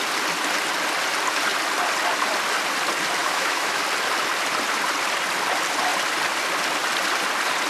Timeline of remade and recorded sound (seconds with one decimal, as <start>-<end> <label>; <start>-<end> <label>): 0.0-3.2 recorded; 3.2-3.8 remade; 3.8-7.7 recorded